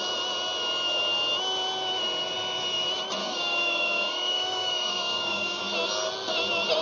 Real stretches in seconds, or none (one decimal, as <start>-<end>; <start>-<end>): 0.0-3.2; 5.6-6.8